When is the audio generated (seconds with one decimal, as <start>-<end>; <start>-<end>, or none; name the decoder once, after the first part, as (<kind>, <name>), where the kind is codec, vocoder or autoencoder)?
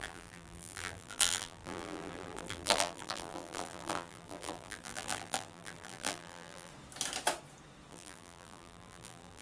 0.0-6.7 (vocoder, BigVGAN v2); 7.9-9.4